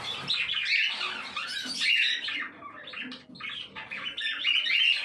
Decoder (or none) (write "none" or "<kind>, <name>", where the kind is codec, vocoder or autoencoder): none